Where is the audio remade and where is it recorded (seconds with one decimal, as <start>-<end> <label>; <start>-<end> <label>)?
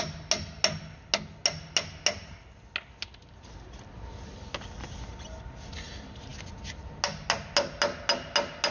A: 0.0-8.7 recorded